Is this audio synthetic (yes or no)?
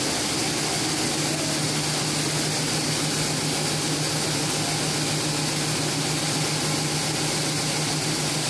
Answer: no